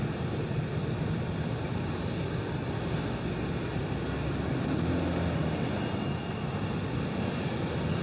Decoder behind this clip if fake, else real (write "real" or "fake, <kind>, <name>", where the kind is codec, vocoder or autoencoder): real